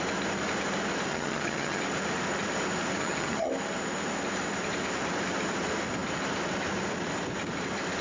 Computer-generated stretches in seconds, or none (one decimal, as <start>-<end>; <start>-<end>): 1.1-1.8; 3.0-3.5